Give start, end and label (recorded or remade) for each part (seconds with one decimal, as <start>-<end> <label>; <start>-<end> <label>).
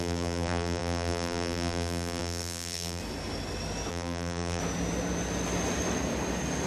0.0-3.0 remade; 3.0-3.9 recorded; 3.9-4.6 remade; 4.6-6.7 recorded